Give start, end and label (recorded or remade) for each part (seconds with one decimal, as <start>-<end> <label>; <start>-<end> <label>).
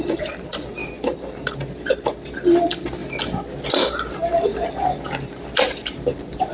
0.0-3.0 remade; 3.0-3.7 recorded; 3.7-6.5 remade